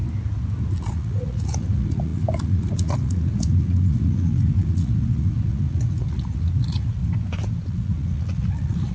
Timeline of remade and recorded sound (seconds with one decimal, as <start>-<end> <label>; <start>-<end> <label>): 0.0-0.8 recorded; 0.8-7.0 remade; 7.0-7.7 recorded; 7.7-8.9 remade